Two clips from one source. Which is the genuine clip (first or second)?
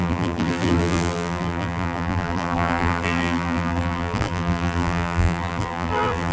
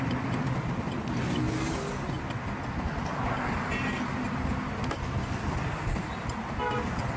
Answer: second